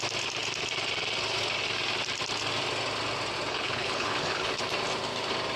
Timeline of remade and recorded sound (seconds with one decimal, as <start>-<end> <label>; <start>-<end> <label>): 0.0-3.5 recorded; 3.5-4.6 remade; 4.6-5.6 recorded